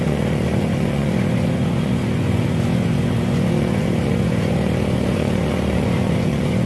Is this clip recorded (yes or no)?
no